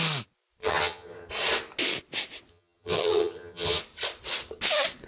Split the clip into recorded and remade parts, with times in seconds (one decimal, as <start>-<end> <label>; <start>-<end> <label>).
0.0-0.6 recorded; 0.6-1.3 remade; 1.3-2.5 recorded; 2.5-3.8 remade; 3.8-5.1 recorded